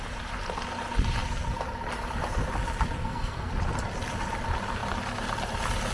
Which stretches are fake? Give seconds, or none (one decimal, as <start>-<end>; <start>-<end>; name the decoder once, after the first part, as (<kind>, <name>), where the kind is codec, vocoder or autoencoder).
3.0-3.5 (codec, SNAC)